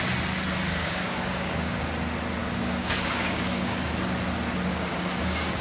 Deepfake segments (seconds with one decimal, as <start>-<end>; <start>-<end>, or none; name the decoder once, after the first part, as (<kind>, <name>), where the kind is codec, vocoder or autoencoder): 0.8-1.8 (codec, DAC); 2.4-3.9; 4.7-5.6